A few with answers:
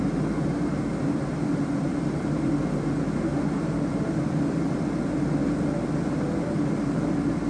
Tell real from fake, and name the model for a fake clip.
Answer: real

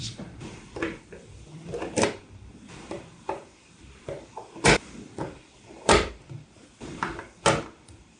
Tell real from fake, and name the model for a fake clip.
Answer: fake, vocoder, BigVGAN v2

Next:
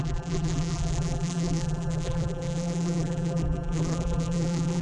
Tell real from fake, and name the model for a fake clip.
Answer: fake, vocoder, BigVGAN v2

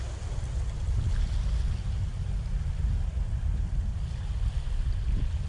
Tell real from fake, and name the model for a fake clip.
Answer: real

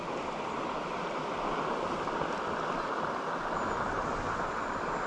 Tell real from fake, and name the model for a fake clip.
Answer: real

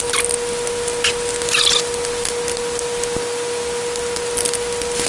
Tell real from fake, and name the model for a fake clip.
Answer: real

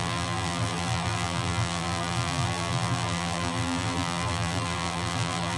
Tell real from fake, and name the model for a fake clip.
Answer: fake, vocoder, BigVGAN v2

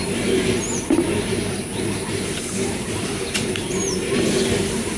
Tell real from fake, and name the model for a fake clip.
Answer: fake, vocoder, BigVGAN v2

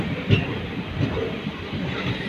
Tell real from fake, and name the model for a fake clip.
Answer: real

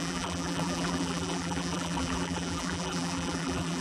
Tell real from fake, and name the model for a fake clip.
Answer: fake, vocoder, BigVGAN v2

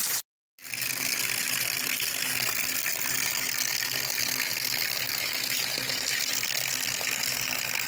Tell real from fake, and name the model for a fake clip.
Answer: real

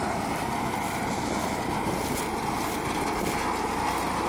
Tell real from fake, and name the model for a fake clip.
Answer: real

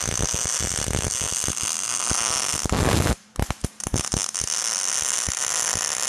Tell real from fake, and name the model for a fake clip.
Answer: real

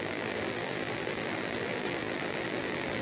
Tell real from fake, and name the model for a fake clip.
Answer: fake, vocoder, BigVGAN v2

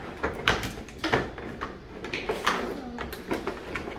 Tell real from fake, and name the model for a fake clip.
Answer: real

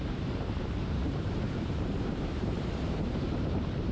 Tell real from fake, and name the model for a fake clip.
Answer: fake, vocoder, BigVGAN v2